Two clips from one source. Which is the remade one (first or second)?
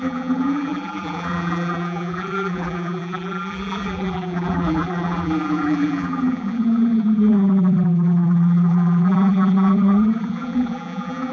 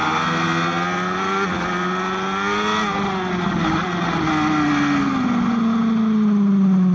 first